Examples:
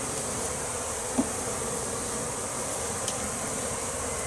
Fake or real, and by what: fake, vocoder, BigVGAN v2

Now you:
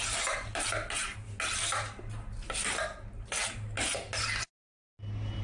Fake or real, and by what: real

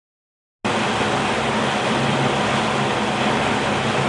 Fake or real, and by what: real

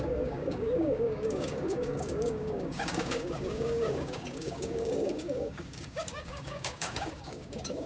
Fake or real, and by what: fake, codec, DAC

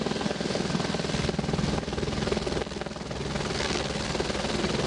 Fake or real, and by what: real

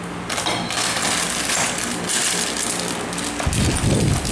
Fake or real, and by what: real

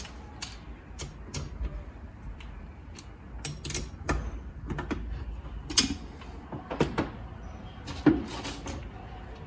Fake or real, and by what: real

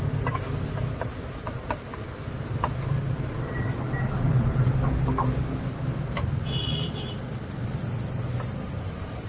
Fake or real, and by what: real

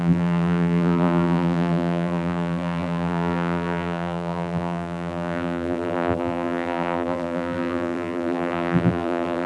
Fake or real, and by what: fake, vocoder, BigVGAN v2